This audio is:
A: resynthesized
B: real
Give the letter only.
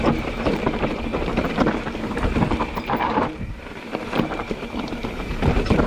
A